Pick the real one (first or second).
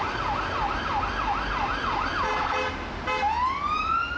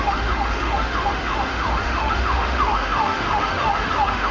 first